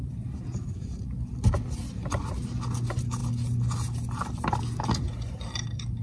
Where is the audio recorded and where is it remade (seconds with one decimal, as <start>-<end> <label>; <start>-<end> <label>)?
0.0-6.0 recorded